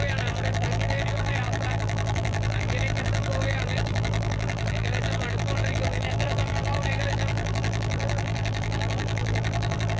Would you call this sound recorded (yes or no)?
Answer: no